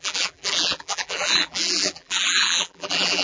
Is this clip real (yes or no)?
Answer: no